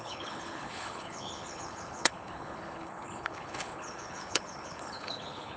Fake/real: fake